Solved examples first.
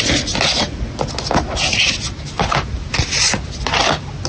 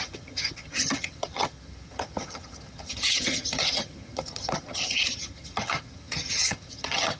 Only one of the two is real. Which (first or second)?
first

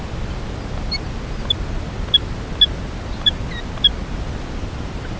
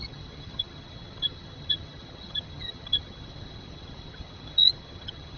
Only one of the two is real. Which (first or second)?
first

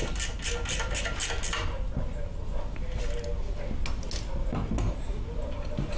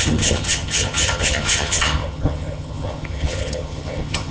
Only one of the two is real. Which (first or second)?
first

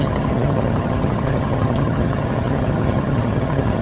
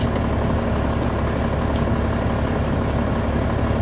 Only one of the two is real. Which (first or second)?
second